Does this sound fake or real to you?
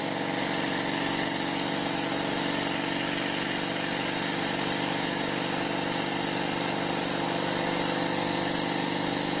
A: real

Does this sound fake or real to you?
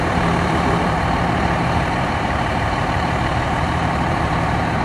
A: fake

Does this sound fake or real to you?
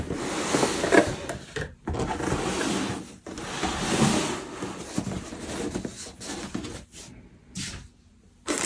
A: real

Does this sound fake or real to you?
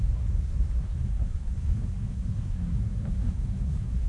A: fake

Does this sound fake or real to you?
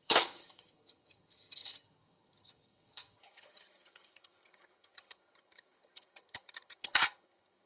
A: fake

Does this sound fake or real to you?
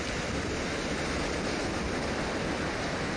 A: fake